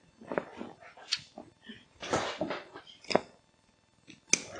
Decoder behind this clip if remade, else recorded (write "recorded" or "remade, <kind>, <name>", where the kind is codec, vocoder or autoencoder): recorded